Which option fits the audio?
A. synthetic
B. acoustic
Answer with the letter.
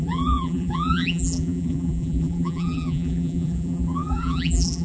A